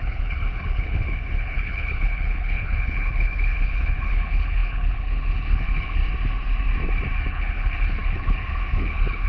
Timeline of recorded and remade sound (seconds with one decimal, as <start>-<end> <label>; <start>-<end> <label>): 0.0-6.0 remade; 6.0-7.3 recorded; 7.3-9.3 remade